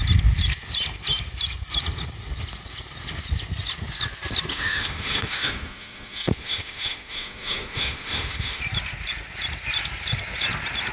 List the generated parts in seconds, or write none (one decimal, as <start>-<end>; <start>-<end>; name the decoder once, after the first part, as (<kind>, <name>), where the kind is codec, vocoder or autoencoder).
4.5-8.6 (autoencoder, DAC-VAE)